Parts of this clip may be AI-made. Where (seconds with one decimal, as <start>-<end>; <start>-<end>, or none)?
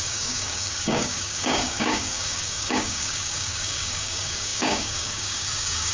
0.0-5.9